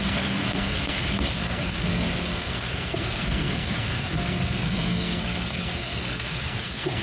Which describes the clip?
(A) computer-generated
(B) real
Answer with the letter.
A